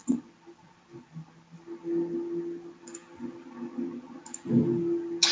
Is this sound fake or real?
real